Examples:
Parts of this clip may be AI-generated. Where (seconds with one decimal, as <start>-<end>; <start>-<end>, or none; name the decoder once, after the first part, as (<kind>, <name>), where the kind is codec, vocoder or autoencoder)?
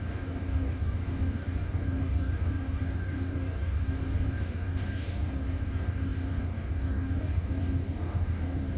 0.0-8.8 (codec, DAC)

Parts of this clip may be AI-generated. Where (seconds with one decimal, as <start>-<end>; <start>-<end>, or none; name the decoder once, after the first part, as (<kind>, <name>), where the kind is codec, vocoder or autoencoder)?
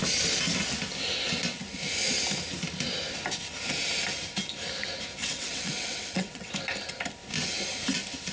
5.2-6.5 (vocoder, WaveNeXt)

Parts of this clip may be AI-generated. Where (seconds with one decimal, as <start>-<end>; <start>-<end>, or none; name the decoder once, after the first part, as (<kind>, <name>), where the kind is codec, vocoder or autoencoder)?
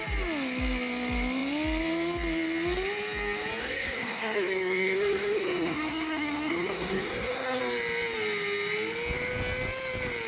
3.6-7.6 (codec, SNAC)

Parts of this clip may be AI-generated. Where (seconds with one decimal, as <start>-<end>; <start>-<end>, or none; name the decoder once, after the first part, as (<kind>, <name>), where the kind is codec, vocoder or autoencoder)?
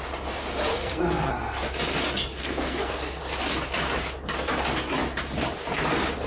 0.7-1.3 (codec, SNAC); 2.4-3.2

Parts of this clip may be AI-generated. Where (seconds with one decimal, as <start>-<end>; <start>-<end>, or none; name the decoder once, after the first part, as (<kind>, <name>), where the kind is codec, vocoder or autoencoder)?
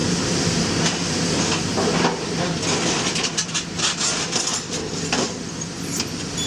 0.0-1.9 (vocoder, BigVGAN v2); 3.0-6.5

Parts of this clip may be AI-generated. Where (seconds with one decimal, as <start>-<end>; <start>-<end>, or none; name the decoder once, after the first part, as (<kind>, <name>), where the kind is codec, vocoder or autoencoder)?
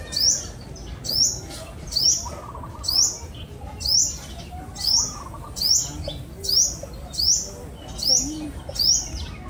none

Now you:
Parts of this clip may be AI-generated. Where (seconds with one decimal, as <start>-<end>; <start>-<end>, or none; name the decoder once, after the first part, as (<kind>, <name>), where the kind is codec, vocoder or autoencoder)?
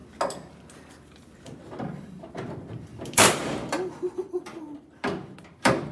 0.8-5.9 (vocoder, BigVGAN v2)